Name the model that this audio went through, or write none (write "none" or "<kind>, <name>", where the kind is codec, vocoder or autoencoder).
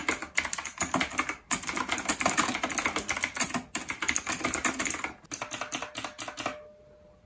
none